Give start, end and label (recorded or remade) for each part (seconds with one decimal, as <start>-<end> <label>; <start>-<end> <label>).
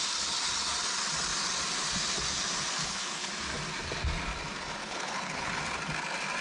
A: 0.0-2.8 recorded; 2.8-3.3 remade; 3.3-4.8 recorded; 4.8-5.6 remade; 5.6-6.4 recorded